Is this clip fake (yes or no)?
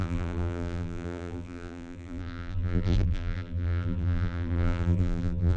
yes